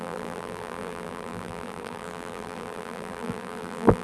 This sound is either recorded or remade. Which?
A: remade